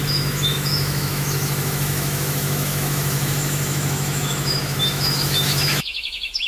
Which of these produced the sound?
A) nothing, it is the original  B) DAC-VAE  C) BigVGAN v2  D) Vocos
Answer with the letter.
B